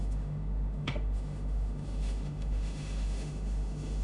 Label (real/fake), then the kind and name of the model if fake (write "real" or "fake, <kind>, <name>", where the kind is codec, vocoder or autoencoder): fake, autoencoder, DAC-VAE